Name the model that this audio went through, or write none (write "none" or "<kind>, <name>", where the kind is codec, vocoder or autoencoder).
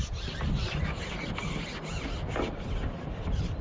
none